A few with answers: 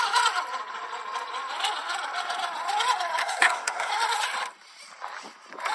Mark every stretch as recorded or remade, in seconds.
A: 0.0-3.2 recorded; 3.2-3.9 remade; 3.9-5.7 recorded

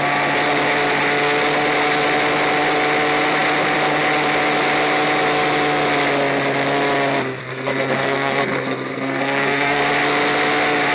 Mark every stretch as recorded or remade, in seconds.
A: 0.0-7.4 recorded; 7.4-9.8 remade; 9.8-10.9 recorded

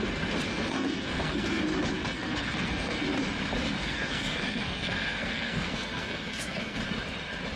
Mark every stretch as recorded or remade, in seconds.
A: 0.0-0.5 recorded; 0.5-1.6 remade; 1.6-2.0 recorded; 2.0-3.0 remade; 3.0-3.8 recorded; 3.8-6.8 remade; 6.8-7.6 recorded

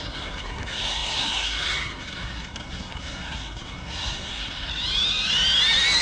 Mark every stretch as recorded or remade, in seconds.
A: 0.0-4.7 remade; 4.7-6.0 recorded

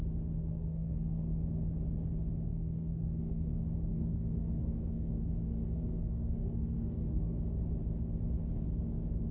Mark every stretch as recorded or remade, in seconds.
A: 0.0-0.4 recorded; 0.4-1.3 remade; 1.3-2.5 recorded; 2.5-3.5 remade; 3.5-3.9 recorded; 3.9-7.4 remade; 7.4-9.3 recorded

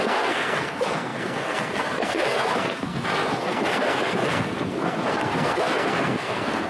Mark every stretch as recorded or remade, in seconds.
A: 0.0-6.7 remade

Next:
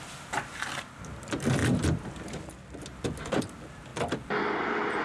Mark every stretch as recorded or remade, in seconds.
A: 0.0-5.0 recorded